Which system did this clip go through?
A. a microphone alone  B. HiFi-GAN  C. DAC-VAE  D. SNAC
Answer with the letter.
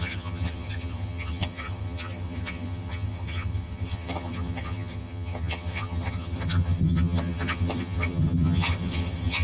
B